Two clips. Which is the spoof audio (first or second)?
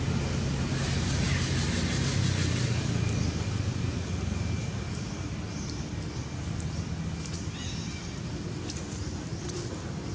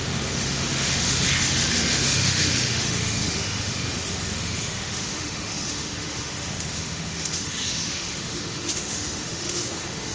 second